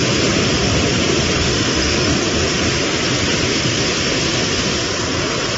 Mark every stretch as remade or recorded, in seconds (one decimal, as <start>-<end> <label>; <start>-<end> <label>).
0.0-1.4 recorded; 1.4-2.1 remade; 2.1-5.6 recorded